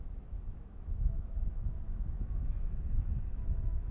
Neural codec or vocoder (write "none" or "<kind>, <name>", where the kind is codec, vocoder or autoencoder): autoencoder, DAC-VAE